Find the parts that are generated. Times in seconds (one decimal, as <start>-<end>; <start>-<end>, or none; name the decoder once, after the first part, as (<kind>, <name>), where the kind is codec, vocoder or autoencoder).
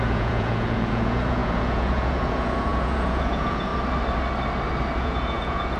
0.0-3.7 (vocoder, Vocos); 5.0-5.8